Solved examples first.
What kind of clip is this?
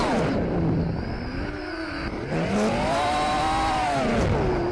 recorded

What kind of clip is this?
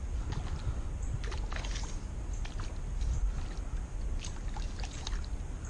recorded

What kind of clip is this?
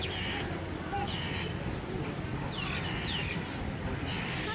recorded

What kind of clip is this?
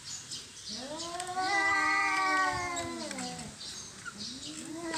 recorded